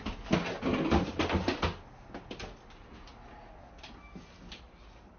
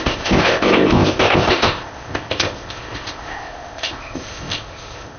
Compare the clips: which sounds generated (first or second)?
second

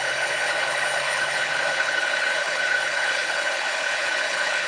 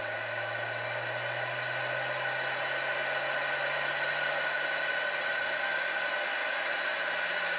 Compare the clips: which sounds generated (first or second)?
first